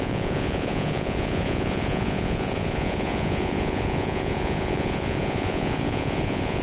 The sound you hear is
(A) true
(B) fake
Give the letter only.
B